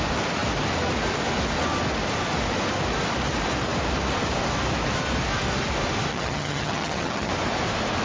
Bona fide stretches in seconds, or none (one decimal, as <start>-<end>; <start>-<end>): 0.0-6.1; 7.3-8.0